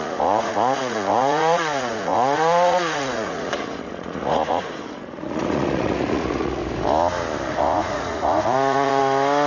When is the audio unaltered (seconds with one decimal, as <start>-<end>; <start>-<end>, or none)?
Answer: 6.6-7.5; 9.0-9.5